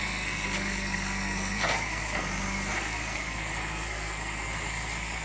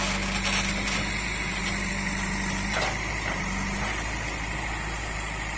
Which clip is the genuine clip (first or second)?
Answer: second